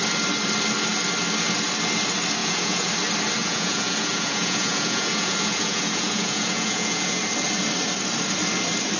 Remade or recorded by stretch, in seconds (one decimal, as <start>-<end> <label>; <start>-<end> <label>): 0.0-2.4 recorded; 2.4-2.9 remade; 2.9-3.4 recorded; 3.4-7.2 remade; 7.2-9.0 recorded